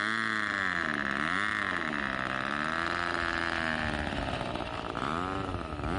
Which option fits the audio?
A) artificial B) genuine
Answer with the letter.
B